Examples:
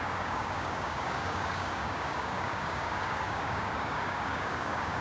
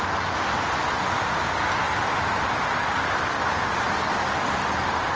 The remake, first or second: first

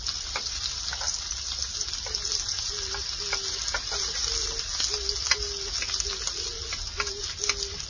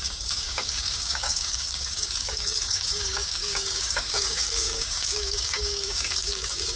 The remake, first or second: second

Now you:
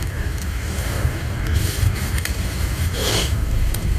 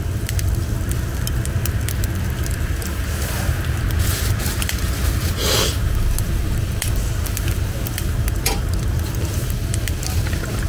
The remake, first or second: first